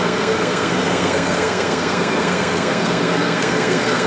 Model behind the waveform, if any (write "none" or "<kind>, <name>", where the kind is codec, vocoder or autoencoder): codec, SNAC